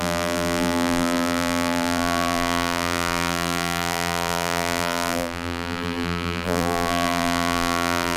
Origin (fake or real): fake